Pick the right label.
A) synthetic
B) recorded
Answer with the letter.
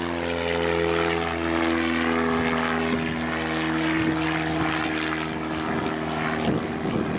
B